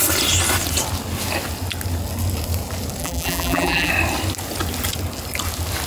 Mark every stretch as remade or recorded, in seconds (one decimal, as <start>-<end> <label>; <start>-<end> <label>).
0.0-3.0 recorded; 3.0-3.9 remade; 3.9-5.9 recorded